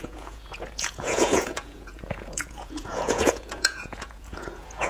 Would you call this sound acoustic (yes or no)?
no